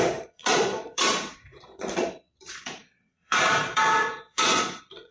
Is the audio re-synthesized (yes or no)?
yes